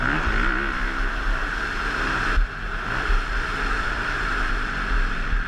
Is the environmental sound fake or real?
real